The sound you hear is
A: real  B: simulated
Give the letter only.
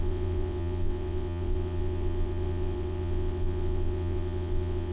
B